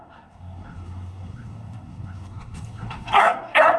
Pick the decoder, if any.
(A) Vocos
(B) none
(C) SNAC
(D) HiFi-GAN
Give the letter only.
C